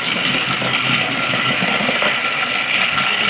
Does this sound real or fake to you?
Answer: real